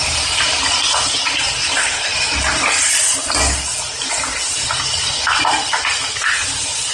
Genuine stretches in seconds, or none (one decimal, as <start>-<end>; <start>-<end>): 0.0-1.6; 2.1-6.9

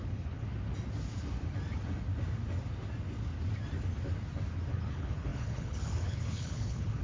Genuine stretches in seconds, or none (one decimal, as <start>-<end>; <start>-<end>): 0.5-4.7

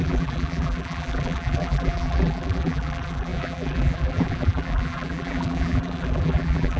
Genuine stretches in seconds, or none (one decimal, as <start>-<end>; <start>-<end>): none

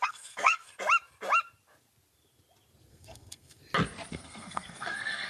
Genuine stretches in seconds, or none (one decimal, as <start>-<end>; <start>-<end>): 0.7-2.9; 3.6-4.1

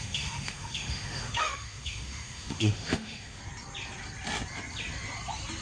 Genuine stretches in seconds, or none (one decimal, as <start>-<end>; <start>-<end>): 3.4-5.6

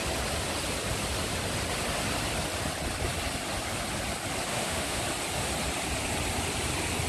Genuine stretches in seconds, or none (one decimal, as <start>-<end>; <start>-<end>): 0.0-4.5; 5.0-7.1